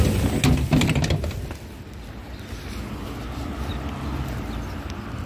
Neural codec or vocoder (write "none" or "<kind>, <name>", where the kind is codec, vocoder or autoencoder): none